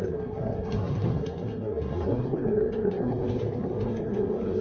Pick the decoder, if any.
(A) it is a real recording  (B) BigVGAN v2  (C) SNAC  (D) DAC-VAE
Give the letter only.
C